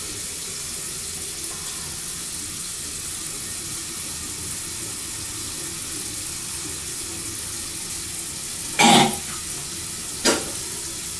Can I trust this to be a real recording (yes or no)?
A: yes